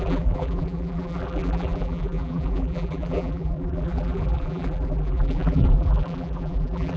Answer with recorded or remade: remade